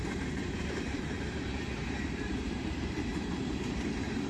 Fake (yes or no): yes